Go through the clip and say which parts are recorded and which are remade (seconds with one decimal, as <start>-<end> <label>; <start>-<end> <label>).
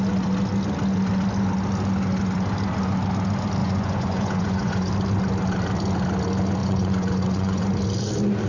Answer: 0.0-3.6 recorded; 3.6-4.9 remade; 4.9-6.6 recorded; 6.6-7.7 remade; 7.7-8.5 recorded